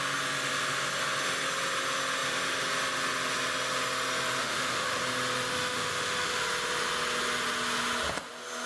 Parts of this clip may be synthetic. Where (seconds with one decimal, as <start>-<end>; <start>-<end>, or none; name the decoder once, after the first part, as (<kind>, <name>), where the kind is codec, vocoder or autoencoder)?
4.4-5.0 (autoencoder, DAC-VAE); 5.5-6.4